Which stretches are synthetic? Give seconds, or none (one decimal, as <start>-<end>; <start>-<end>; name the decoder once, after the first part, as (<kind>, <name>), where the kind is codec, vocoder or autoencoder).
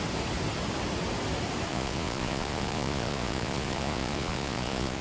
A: 1.7-5.0 (vocoder, Vocos)